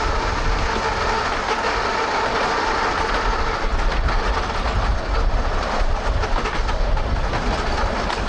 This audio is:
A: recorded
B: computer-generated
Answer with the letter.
A